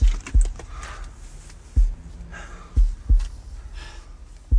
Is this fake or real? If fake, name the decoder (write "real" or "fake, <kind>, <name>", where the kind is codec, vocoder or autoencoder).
real